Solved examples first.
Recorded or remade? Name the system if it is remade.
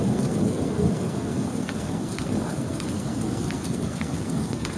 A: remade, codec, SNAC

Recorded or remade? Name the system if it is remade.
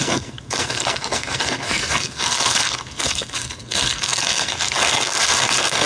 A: remade, codec, SNAC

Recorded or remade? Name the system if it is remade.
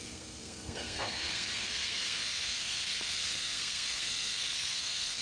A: remade, codec, SNAC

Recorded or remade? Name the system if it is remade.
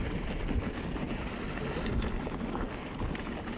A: recorded